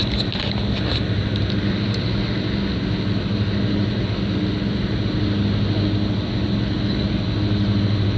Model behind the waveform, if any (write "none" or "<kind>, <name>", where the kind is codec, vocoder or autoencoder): none